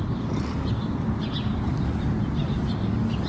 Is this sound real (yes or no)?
yes